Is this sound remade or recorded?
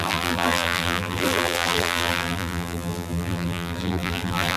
remade